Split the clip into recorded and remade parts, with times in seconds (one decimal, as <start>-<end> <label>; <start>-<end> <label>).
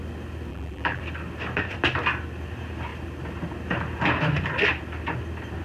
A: 0.0-0.5 recorded; 0.5-1.0 remade; 1.0-5.6 recorded